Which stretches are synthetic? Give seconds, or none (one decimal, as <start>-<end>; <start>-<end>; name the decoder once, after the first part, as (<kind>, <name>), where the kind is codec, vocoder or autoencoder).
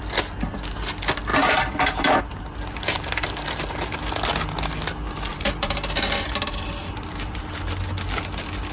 1.3-2.2 (vocoder, BigVGAN v2); 5.3-7.6